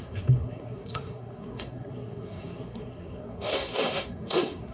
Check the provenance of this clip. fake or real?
fake